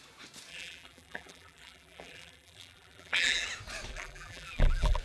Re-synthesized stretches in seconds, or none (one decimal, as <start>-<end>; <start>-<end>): 0.5-3.5; 3.9-5.0